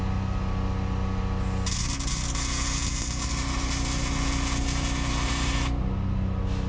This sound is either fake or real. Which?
real